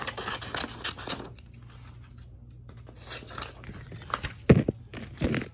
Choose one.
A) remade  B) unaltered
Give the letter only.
B